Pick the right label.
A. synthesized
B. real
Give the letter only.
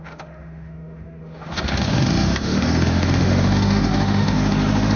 A